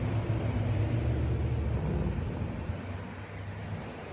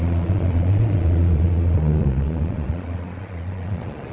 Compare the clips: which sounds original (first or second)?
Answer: first